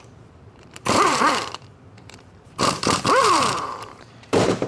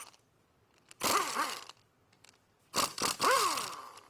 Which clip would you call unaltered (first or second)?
second